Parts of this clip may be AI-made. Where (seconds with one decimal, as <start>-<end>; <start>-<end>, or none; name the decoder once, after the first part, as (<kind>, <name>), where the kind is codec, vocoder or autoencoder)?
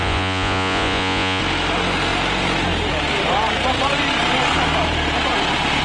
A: 0.0-1.4 (vocoder, Vocos)